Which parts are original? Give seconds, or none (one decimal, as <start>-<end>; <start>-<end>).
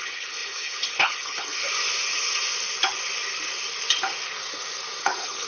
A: 1.7-5.0